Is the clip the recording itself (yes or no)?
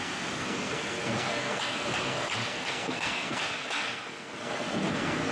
no